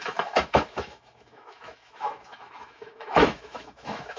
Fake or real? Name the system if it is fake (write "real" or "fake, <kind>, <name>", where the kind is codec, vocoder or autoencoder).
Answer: fake, autoencoder, DAC-VAE